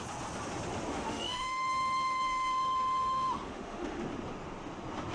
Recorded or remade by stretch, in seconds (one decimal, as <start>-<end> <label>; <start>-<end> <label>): 0.0-0.9 recorded; 0.9-4.0 remade; 4.0-5.1 recorded